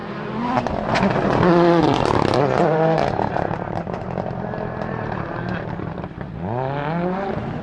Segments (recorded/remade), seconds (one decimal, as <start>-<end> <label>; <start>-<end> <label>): 0.0-2.6 recorded; 2.6-5.9 remade; 5.9-7.6 recorded